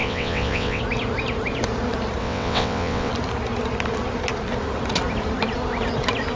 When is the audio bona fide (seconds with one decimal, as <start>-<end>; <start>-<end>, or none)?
0.8-2.2; 3.1-6.4